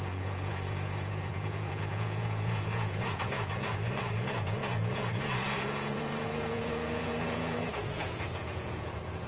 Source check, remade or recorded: remade